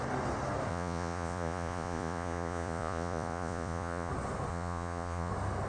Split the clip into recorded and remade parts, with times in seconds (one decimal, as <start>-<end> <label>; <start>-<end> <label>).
0.0-0.7 recorded; 0.7-4.1 remade; 4.1-4.5 recorded; 4.5-5.3 remade; 5.3-5.7 recorded